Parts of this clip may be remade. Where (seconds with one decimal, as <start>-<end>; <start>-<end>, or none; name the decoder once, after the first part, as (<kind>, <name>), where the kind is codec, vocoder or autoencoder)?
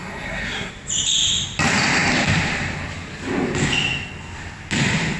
0.0-0.7 (codec, SNAC)